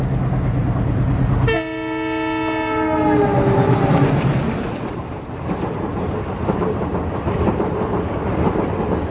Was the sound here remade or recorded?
recorded